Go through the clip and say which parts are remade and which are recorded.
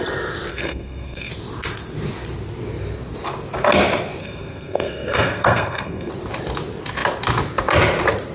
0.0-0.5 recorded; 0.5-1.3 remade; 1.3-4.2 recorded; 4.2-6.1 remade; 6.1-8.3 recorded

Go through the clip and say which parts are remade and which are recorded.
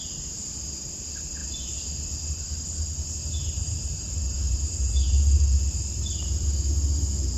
0.0-3.6 recorded; 3.6-6.6 remade; 6.6-7.4 recorded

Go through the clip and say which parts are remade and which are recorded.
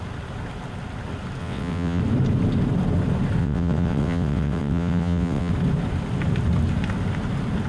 0.0-1.4 recorded; 1.4-2.0 remade; 2.0-3.4 recorded; 3.4-5.5 remade; 5.5-7.7 recorded